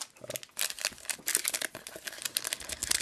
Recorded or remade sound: recorded